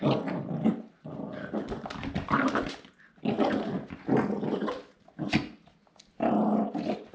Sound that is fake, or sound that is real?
real